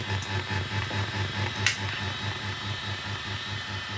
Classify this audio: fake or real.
fake